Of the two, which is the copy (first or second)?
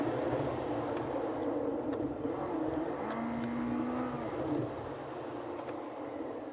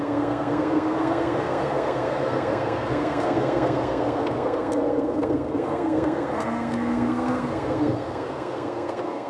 second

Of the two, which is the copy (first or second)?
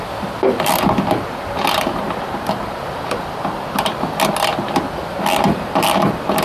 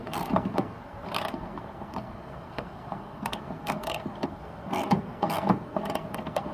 second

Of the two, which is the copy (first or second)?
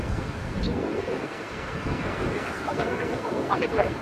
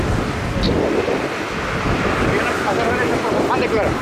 first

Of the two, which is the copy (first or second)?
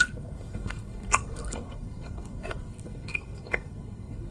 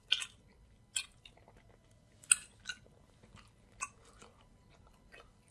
first